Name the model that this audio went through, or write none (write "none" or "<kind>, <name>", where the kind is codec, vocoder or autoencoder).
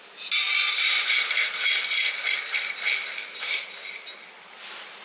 none